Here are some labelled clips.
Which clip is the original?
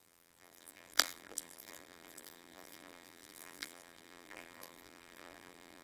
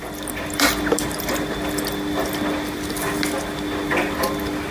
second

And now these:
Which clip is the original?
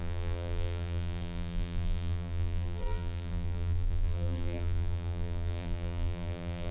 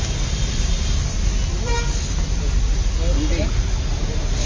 second